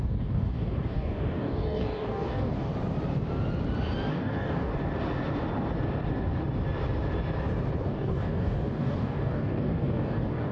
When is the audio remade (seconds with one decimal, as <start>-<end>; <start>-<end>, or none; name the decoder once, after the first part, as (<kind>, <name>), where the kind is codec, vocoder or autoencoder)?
0.0-2.7 (codec, DAC); 4.1-4.7; 7.8-10.5